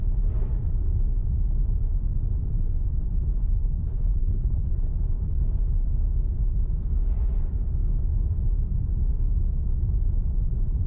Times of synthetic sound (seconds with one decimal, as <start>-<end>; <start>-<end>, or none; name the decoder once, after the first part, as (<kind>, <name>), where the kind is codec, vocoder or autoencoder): 3.4-4.9 (codec, HILCodec)